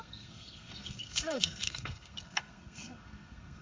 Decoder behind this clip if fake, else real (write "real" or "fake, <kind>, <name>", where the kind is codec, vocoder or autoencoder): fake, codec, SNAC